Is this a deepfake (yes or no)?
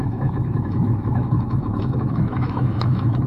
yes